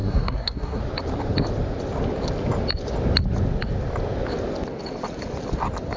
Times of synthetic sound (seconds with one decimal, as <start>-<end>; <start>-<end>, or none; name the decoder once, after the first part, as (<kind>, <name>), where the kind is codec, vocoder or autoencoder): 0.0-0.8 (codec, SNAC)